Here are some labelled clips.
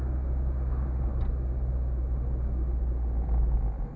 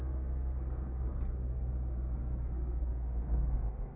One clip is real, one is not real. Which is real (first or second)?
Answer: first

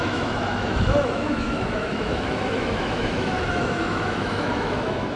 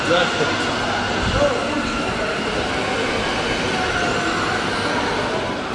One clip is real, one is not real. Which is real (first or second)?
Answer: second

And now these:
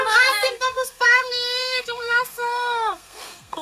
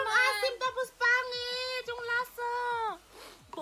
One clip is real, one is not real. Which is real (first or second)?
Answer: second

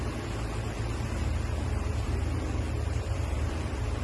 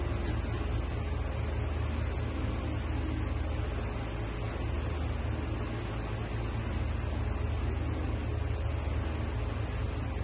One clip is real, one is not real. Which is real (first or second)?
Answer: second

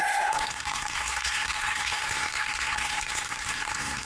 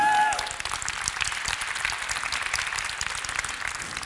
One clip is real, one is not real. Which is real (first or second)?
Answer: second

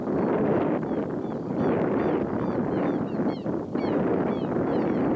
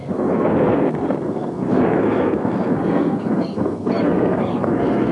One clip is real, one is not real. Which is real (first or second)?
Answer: first